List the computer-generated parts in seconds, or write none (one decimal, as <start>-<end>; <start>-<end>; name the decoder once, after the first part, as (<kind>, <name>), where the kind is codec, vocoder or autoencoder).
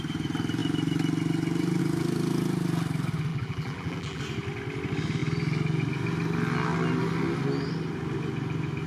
3.3-4.2 (vocoder, BigVGAN v2)